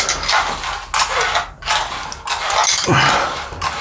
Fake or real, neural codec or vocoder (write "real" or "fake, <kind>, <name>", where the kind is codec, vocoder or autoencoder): real